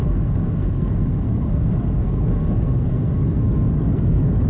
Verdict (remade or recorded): remade